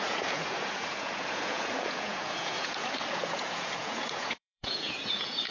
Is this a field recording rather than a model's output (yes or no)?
no